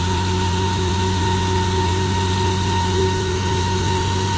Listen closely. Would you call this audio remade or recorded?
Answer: recorded